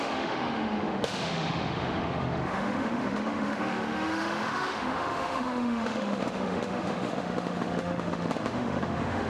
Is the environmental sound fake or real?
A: fake